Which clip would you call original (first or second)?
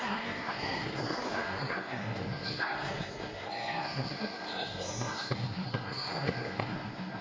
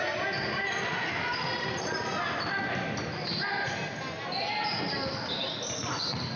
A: second